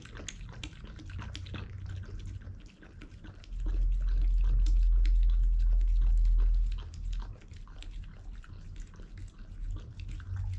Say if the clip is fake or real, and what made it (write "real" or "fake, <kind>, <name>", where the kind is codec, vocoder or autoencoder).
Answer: real